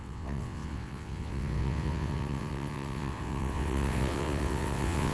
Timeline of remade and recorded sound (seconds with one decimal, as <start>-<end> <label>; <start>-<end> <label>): 0.0-5.1 remade